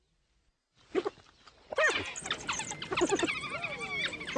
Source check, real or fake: real